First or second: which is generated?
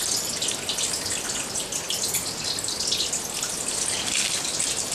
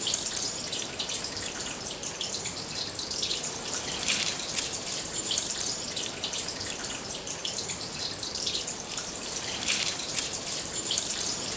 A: second